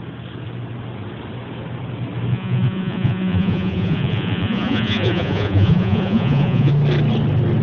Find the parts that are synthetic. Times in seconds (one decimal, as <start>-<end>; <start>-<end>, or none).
2.3-6.7